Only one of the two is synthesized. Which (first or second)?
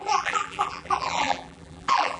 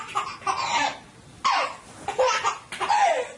first